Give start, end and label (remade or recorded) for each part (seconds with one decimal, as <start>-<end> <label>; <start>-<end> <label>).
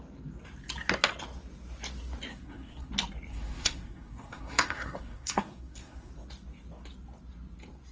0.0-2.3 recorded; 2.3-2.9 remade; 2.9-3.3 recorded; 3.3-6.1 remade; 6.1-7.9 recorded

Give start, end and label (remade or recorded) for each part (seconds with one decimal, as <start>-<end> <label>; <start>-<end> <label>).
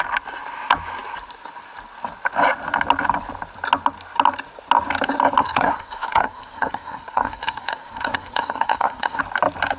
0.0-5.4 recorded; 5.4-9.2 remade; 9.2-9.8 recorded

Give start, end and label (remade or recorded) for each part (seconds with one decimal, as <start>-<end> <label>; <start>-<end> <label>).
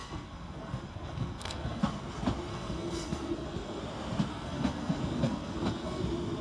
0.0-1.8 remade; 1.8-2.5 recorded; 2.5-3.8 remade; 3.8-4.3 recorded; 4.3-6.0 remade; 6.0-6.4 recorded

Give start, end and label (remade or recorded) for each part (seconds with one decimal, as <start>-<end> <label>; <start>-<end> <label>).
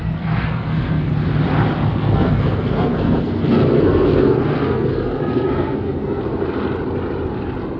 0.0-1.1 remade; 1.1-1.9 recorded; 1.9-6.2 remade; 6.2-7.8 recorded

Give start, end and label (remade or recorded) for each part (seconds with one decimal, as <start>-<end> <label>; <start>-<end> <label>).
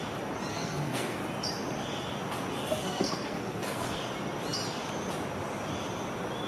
0.0-0.5 recorded; 0.5-1.2 remade; 1.2-2.6 recorded; 2.6-4.0 remade; 4.0-6.5 recorded